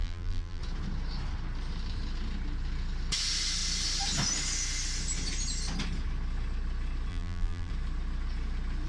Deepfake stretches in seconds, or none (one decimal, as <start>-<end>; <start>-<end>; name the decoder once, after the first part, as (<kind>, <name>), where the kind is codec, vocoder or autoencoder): 0.0-0.6 (vocoder, BigVGAN v2); 7.1-7.7